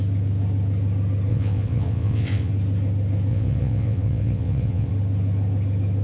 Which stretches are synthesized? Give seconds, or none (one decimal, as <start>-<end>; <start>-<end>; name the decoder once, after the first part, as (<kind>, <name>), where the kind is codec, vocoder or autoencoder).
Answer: 1.3-2.5 (vocoder, WaveNeXt); 3.3-4.9